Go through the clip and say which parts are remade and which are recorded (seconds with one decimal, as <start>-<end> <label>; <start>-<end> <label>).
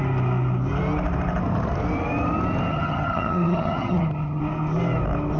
0.0-2.7 recorded; 2.7-4.4 remade; 4.4-5.4 recorded